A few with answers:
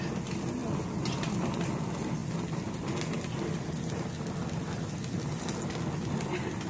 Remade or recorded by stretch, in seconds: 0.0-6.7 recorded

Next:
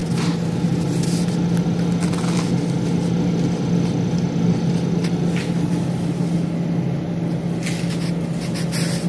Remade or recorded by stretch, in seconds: 0.0-9.1 recorded